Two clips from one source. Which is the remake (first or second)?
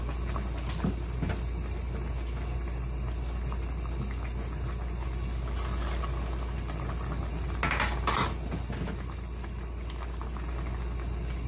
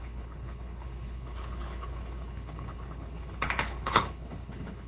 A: second